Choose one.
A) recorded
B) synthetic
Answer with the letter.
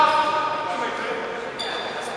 A